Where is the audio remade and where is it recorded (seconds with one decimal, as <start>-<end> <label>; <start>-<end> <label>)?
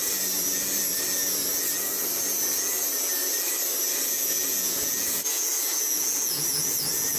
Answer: 0.0-3.9 recorded; 3.9-7.2 remade